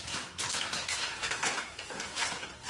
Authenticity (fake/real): fake